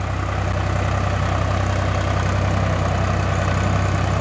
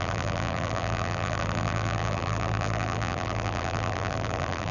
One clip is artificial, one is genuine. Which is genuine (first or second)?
first